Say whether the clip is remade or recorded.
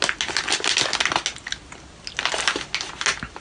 recorded